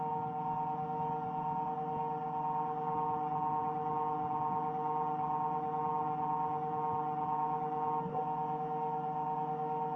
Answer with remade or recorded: recorded